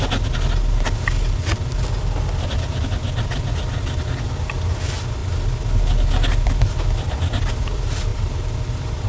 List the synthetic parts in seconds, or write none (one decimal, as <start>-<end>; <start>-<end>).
8.1-9.1